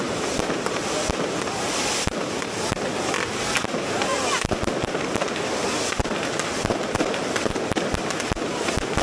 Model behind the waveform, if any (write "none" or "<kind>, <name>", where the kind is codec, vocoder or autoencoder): none